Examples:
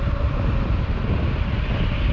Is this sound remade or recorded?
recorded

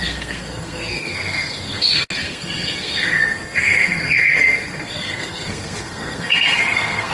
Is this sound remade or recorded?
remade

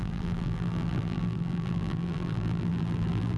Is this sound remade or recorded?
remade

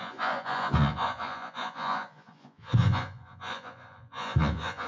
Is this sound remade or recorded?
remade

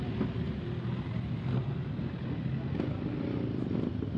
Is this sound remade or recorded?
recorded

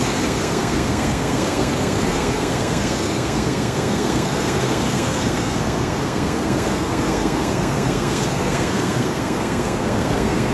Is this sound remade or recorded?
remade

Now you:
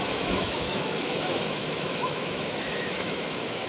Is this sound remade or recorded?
remade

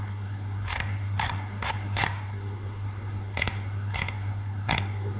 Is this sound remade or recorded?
remade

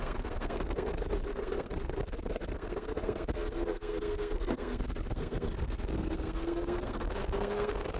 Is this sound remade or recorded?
remade